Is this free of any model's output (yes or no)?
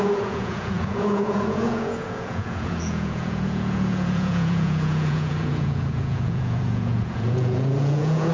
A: no